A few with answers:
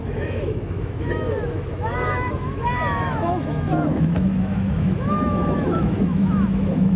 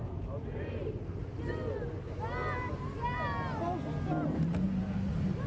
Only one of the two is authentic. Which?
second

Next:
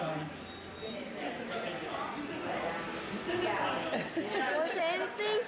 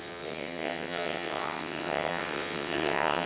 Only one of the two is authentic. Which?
first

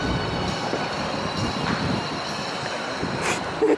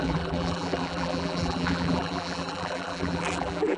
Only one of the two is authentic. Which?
first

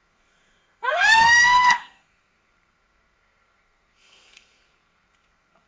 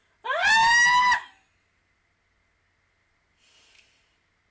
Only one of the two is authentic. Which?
second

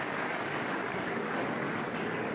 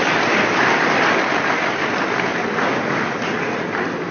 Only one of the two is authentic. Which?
second